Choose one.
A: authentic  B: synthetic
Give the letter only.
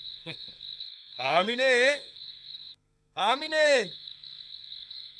B